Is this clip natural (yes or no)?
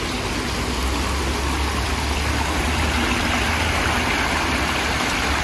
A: yes